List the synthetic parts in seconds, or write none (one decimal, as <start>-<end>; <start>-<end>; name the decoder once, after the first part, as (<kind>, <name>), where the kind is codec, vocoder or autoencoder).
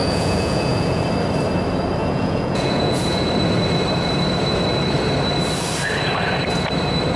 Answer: 0.0-1.0 (vocoder, Vocos); 2.0-3.3